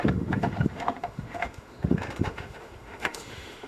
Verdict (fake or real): fake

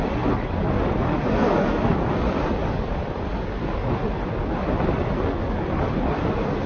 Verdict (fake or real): real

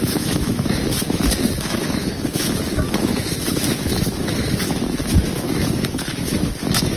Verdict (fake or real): fake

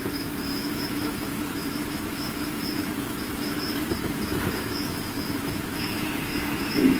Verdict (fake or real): fake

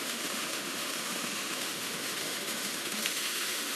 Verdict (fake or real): fake